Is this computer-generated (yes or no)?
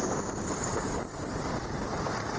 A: no